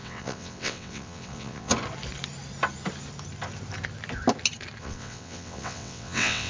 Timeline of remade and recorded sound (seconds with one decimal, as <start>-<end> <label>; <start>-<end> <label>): 0.0-1.7 remade; 1.7-4.8 recorded; 4.8-6.5 remade